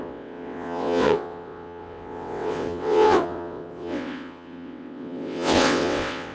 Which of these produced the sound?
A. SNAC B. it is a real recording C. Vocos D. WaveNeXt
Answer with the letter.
D